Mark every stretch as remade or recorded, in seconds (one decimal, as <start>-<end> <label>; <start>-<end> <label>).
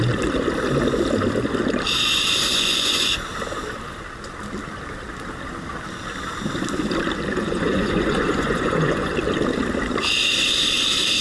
0.0-2.5 recorded; 2.5-3.1 remade; 3.1-7.3 recorded; 7.3-9.1 remade; 9.1-11.2 recorded